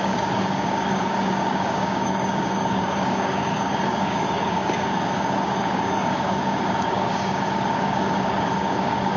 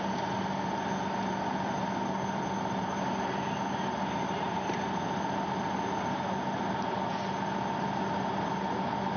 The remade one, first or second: first